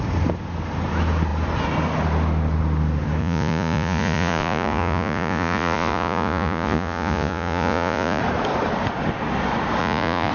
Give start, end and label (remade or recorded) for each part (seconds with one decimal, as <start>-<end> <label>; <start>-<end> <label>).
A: 0.0-3.2 recorded; 3.2-8.2 remade; 8.2-9.8 recorded; 9.8-10.3 remade